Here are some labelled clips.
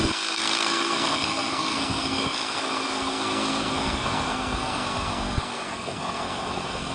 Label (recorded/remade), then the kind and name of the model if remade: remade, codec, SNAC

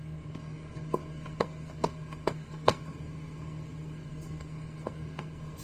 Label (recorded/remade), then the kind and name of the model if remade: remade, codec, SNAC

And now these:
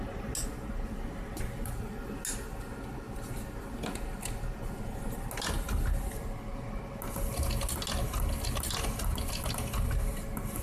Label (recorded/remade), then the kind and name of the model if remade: recorded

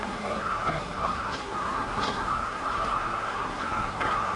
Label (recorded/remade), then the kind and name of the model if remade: remade, codec, SNAC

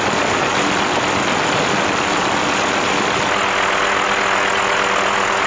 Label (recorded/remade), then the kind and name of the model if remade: recorded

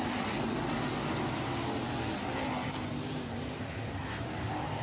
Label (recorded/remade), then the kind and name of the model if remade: recorded